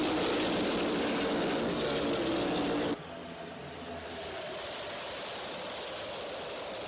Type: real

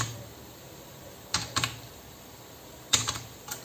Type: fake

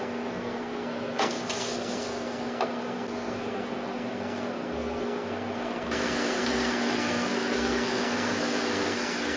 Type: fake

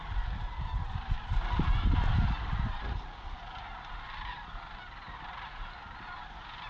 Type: real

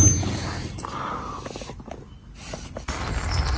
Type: real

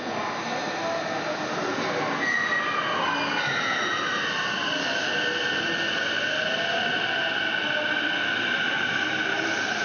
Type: real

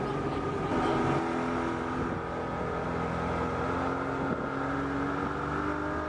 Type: real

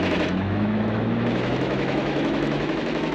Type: fake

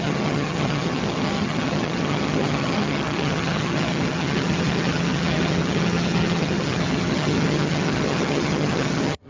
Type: fake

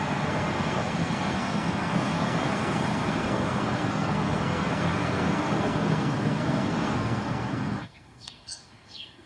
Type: fake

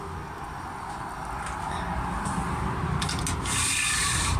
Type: real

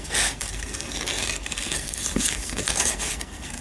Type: fake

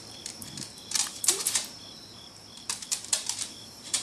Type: fake